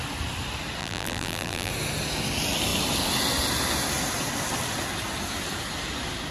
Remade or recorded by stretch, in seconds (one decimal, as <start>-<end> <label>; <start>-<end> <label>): 0.0-0.8 recorded; 0.8-1.7 remade; 1.7-6.3 recorded

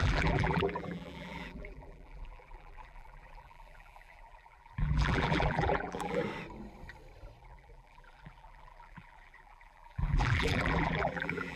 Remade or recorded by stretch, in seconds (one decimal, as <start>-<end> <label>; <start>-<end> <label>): 0.0-6.2 remade; 6.2-7.4 recorded; 7.4-11.6 remade

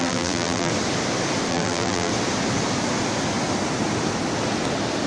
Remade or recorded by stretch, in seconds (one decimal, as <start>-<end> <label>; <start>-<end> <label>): 0.0-0.7 remade; 0.7-1.5 recorded; 1.5-2.1 remade; 2.1-5.1 recorded